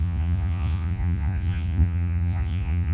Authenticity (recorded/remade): remade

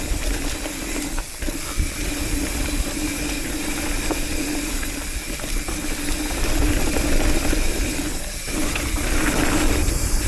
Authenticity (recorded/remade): recorded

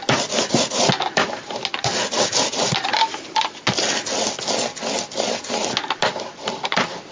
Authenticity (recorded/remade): recorded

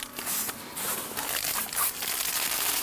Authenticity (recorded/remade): recorded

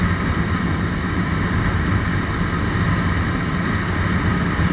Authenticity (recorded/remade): recorded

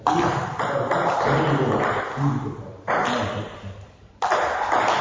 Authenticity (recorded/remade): recorded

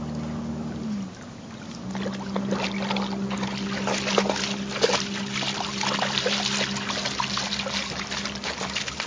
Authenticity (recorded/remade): recorded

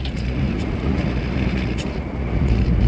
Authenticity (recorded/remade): remade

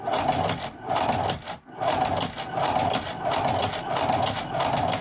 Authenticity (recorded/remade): recorded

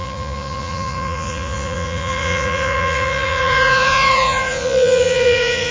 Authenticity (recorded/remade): remade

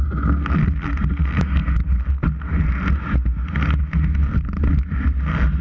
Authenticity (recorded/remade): recorded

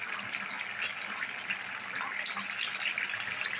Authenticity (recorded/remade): recorded